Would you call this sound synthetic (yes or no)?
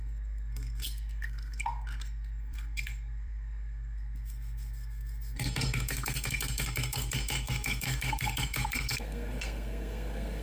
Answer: yes